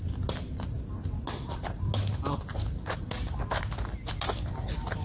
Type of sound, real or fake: real